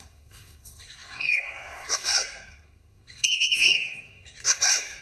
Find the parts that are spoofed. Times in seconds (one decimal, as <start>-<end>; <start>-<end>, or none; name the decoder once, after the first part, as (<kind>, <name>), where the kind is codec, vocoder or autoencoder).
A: 0.0-5.0 (codec, SNAC)